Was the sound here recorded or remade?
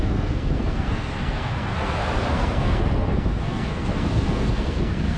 remade